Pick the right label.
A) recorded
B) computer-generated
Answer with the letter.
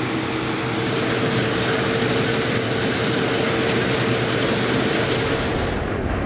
A